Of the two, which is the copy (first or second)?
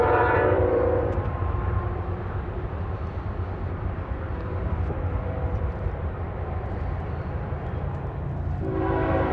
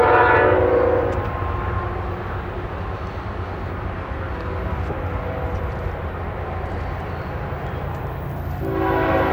first